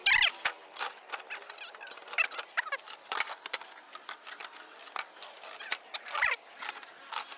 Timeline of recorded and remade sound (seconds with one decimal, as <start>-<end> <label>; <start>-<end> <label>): 0.0-7.4 recorded